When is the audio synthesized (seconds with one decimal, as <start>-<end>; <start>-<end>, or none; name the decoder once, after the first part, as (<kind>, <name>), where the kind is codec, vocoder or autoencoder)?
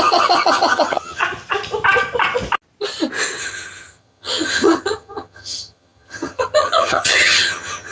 0.0-1.2 (vocoder, HiFi-GAN); 3.4-7.9